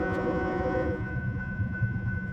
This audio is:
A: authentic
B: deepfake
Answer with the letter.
B